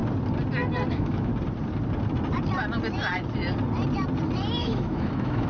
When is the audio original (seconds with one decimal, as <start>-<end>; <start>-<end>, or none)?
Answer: 0.0-0.9; 1.3-4.6